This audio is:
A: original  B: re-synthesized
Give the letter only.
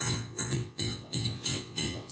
B